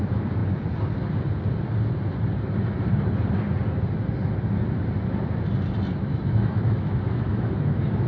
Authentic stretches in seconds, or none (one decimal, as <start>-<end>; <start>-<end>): 0.0-6.0